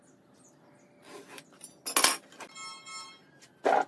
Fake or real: real